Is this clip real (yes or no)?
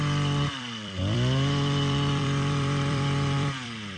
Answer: no